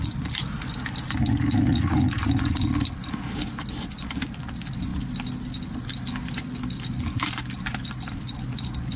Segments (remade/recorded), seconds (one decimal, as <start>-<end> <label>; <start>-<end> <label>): 0.0-1.7 recorded; 1.7-2.3 remade; 2.3-9.0 recorded